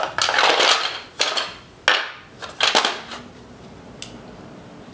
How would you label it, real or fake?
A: real